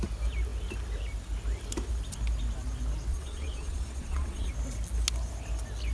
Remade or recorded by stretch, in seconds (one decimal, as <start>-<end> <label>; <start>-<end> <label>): 0.0-3.1 recorded; 3.1-4.5 remade; 4.5-5.9 recorded